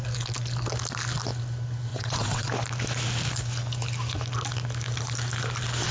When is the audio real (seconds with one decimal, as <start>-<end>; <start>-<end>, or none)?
0.0-1.9; 2.5-5.9

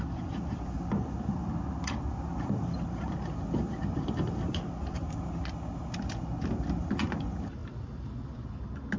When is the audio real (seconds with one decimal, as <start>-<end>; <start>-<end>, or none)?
0.0-7.6; 8.2-9.0

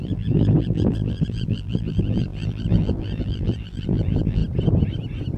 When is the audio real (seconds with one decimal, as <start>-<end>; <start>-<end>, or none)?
4.4-5.4

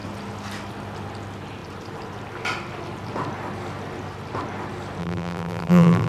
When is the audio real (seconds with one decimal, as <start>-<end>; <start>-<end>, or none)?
0.0-5.0